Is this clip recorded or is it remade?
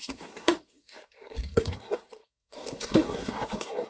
remade